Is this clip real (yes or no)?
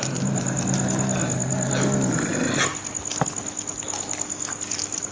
yes